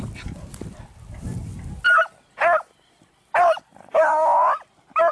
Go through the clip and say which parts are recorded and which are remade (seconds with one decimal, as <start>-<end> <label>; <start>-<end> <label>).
0.0-1.5 remade; 1.5-3.1 recorded; 3.1-4.1 remade; 4.1-5.1 recorded